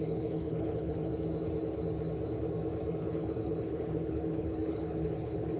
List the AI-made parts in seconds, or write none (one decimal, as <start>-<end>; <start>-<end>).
0.0-1.1; 3.0-5.6